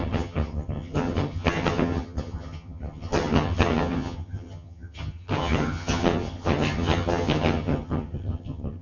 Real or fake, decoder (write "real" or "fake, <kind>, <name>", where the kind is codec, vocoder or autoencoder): fake, vocoder, HiFi-GAN